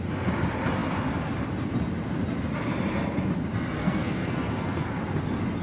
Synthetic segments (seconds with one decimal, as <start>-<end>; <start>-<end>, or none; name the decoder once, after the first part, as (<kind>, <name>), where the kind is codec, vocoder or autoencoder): 3.8-4.9 (codec, SNAC)